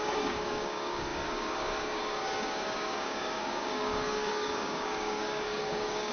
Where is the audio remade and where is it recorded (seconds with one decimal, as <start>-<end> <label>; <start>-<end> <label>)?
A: 0.0-6.1 remade